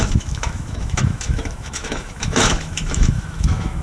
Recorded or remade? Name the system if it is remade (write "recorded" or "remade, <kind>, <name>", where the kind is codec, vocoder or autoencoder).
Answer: remade, autoencoder, DAC-VAE